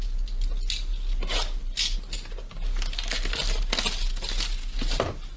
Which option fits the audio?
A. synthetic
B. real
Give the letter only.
B